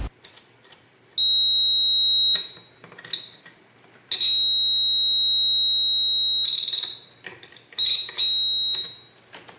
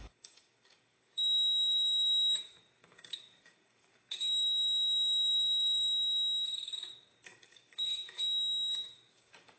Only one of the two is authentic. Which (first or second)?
first